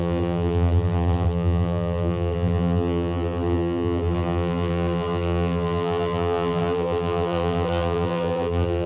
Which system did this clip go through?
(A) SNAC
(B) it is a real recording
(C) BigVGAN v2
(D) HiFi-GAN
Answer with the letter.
C